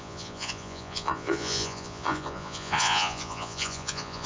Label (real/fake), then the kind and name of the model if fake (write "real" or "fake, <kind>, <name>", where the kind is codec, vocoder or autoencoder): fake, vocoder, Vocos